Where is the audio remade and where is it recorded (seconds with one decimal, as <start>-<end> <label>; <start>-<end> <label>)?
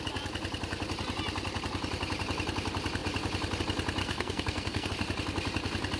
0.0-4.0 recorded; 4.0-4.9 remade; 4.9-6.0 recorded